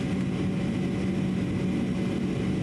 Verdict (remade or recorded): recorded